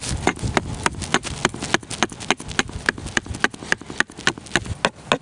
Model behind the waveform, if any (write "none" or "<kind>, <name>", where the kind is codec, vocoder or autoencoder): none